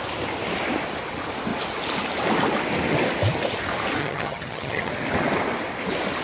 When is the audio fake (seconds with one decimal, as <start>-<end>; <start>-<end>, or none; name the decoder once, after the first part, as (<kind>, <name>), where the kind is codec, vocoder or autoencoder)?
4.0-4.9 (vocoder, HiFi-GAN)